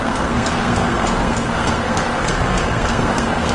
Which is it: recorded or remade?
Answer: remade